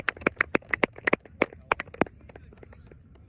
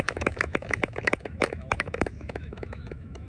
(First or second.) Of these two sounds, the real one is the first